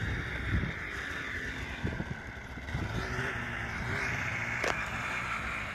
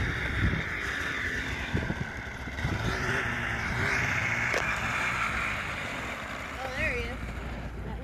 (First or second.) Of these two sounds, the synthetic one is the second